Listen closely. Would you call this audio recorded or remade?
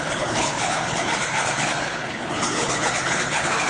remade